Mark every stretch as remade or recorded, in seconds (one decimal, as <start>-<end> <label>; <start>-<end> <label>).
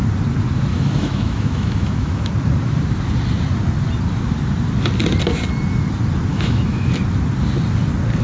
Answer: 0.0-0.7 recorded; 0.7-2.3 remade; 2.3-6.3 recorded; 6.3-6.9 remade; 6.9-8.2 recorded